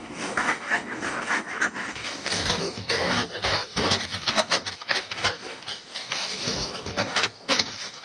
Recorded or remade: remade